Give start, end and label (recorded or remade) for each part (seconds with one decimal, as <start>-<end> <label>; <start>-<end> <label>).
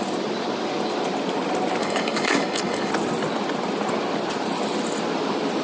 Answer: 0.0-1.8 recorded; 1.8-2.9 remade; 2.9-5.6 recorded